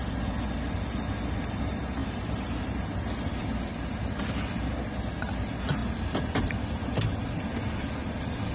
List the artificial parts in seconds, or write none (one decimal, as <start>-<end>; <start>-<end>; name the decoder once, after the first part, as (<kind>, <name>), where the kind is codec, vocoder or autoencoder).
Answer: 2.0-2.8 (vocoder, BigVGAN v2)